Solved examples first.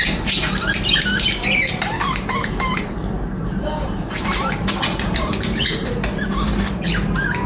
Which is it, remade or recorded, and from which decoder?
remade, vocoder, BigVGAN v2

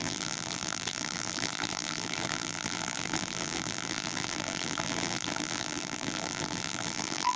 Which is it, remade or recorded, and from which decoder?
remade, vocoder, BigVGAN v2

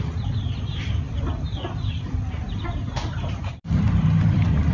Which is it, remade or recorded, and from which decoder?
remade, vocoder, BigVGAN v2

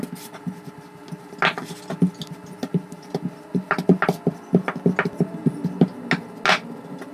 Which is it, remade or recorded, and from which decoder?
recorded